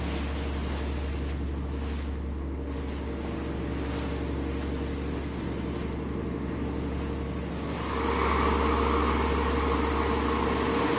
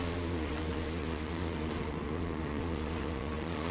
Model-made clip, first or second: second